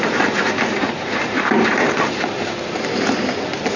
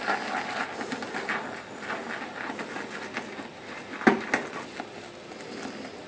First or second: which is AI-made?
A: first